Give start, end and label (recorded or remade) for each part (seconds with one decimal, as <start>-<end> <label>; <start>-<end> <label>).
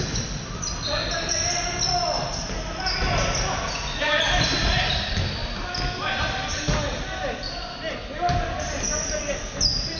0.0-10.0 recorded